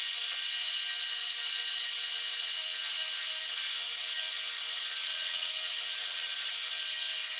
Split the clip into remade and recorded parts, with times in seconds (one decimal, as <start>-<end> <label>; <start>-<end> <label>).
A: 0.0-5.0 recorded; 5.0-5.5 remade; 5.5-6.0 recorded; 6.0-6.5 remade; 6.5-7.4 recorded